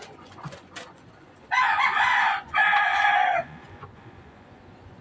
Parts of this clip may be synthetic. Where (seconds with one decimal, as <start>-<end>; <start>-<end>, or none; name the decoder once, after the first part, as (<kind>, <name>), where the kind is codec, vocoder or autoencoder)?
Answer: 0.0-5.0 (vocoder, Vocos)